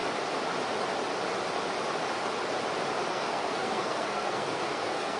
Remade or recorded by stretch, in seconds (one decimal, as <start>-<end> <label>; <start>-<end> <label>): 0.0-3.1 recorded; 3.1-5.2 remade